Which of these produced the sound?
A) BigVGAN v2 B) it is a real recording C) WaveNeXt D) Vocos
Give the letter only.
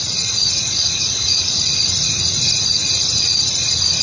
D